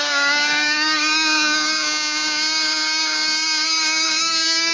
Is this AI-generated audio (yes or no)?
yes